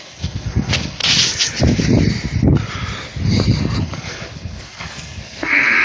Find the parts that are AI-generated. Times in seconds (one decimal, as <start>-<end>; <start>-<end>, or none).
0.0-1.0; 3.8-5.8